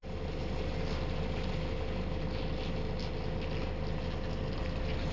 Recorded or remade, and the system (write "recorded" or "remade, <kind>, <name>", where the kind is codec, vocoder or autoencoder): recorded